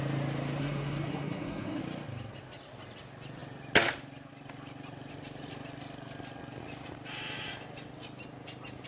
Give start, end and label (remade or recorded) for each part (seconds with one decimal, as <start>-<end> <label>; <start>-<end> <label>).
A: 0.0-0.6 recorded; 0.6-1.8 remade; 1.8-8.9 recorded